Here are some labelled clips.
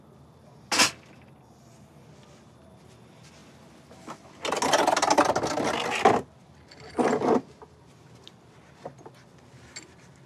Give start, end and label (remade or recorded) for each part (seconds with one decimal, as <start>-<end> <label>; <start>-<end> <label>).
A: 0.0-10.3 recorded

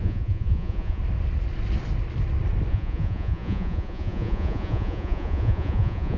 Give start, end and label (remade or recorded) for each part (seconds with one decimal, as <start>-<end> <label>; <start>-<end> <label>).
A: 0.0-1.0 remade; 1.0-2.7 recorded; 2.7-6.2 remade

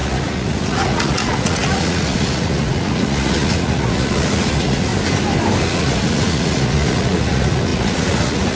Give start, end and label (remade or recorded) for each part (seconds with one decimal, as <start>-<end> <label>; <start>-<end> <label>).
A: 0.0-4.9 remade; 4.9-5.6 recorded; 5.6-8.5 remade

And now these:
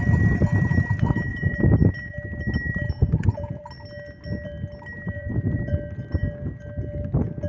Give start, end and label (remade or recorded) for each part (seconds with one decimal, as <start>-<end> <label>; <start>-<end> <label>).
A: 0.0-1.3 recorded; 1.3-2.1 remade; 2.1-3.0 recorded; 3.0-3.6 remade; 3.6-4.9 recorded; 4.9-5.7 remade; 5.7-7.5 recorded

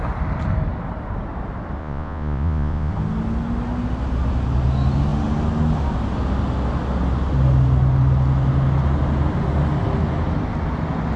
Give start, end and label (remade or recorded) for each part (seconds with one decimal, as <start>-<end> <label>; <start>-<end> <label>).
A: 0.0-1.8 recorded; 1.8-2.9 remade; 2.9-11.2 recorded

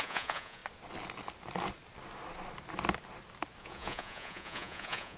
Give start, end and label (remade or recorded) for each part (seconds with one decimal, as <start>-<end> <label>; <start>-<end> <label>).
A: 0.0-0.6 remade; 0.6-3.6 recorded; 3.6-5.2 remade

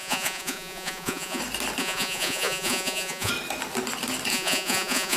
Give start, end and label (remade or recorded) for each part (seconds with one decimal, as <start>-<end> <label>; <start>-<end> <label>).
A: 0.0-1.4 remade; 1.4-1.8 recorded; 1.8-3.3 remade; 3.3-4.3 recorded; 4.3-5.2 remade

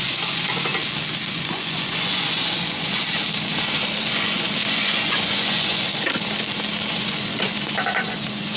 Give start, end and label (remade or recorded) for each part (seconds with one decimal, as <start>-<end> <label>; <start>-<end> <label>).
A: 0.0-0.7 remade; 0.7-1.3 recorded; 1.3-3.0 remade; 3.0-4.0 recorded; 4.0-5.9 remade; 5.9-6.9 recorded; 6.9-8.6 remade